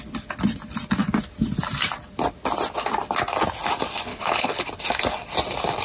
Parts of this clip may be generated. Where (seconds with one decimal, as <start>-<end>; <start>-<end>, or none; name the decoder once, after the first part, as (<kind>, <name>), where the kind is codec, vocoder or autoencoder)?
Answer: 4.1-4.6 (codec, HILCodec)